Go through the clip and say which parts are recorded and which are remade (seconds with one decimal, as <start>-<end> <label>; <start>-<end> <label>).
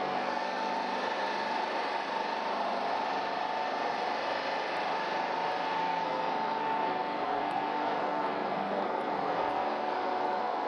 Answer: 0.0-0.7 remade; 0.7-5.8 recorded; 5.8-10.7 remade